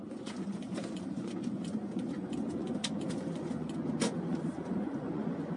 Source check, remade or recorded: remade